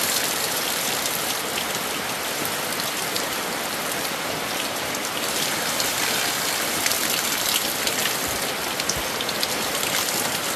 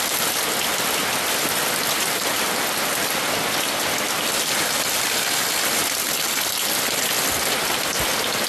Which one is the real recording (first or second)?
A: second